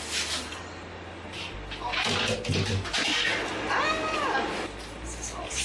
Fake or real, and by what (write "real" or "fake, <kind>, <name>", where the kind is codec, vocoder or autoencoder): real